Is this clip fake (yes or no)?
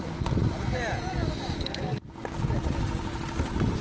no